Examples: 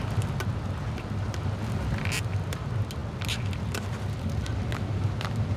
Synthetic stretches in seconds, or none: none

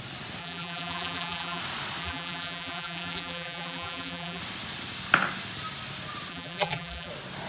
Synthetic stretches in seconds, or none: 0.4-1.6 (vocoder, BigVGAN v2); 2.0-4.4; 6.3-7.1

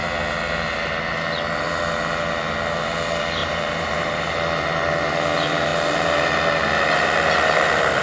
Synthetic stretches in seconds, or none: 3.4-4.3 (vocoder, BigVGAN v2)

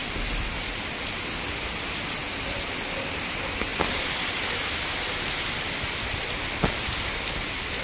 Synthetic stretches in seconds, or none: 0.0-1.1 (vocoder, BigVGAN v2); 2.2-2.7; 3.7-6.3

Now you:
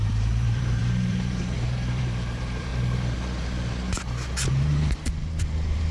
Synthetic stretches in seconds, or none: 0.0-2.7 (vocoder, BigVGAN v2); 4.5-5.9